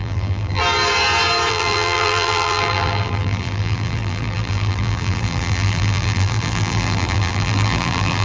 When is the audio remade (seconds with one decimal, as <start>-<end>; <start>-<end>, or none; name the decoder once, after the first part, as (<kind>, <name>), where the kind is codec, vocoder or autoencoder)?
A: 0.0-0.6 (vocoder, BigVGAN v2); 1.5-8.2